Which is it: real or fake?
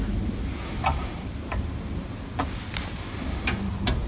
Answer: real